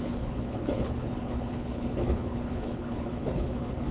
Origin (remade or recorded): remade